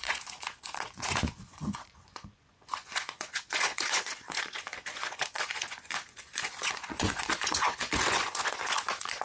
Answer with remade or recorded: remade